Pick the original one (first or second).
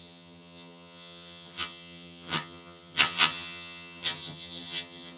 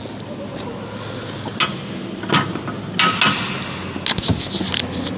second